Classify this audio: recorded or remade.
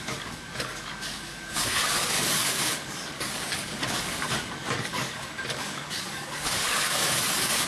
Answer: remade